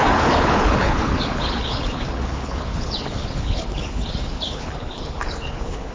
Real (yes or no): no